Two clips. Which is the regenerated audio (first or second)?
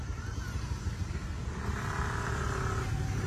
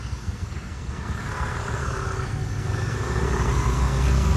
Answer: second